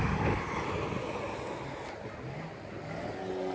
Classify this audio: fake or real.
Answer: real